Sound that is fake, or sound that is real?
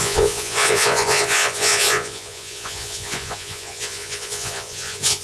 fake